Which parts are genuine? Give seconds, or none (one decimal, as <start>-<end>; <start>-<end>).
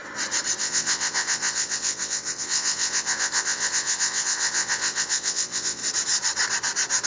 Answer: 0.0-0.6; 5.8-7.1